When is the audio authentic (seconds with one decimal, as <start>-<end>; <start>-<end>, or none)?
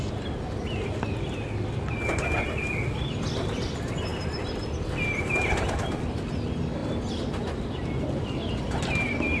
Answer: 0.0-9.4